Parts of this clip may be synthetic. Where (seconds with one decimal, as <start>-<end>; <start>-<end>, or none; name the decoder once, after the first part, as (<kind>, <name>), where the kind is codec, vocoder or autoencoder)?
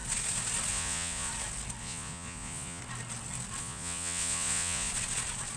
0.7-1.3 (vocoder, Vocos); 1.8-2.8; 3.6-4.9